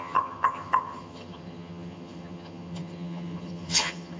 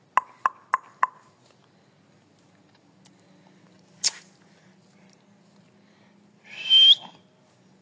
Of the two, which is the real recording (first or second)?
second